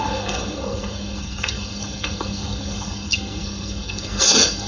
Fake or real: fake